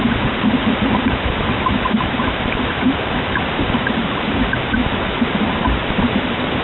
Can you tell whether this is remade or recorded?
remade